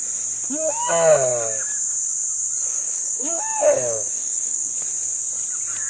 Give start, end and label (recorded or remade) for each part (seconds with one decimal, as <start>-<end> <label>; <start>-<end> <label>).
0.0-2.7 recorded; 2.7-4.7 remade; 4.7-5.9 recorded